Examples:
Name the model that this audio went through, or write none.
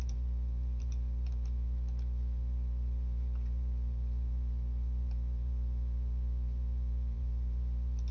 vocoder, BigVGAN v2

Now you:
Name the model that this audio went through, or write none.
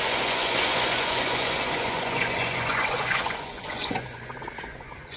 vocoder, Vocos